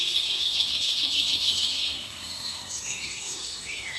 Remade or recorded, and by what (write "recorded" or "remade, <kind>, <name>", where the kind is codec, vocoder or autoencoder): remade, codec, SNAC